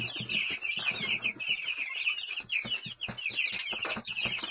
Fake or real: real